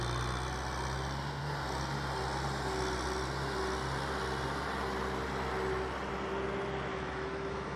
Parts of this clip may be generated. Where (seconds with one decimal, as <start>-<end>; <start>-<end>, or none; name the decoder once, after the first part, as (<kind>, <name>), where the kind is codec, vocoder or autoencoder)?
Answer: 6.9-7.8 (autoencoder, DAC-VAE)